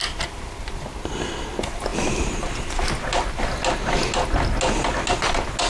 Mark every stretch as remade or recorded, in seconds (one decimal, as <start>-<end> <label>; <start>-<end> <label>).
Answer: 0.0-5.7 recorded